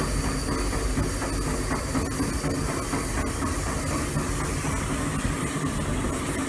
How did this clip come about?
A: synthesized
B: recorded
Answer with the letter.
B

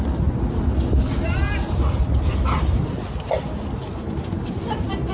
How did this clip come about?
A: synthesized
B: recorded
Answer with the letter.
B